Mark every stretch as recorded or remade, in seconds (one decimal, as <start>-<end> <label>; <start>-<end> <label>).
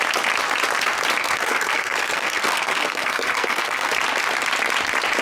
0.0-1.2 recorded; 1.2-3.9 remade; 3.9-5.2 recorded